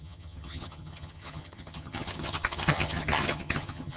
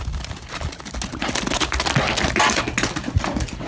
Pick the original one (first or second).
second